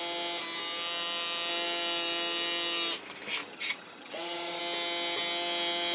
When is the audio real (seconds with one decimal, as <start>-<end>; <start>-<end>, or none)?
0.0-3.4; 4.6-5.9